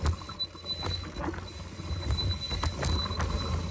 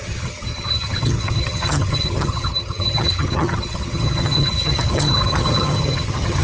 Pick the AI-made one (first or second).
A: second